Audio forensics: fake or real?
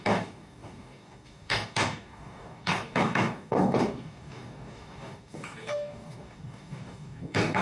fake